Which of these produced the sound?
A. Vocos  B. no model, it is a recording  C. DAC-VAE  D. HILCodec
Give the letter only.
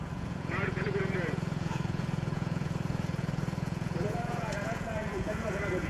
A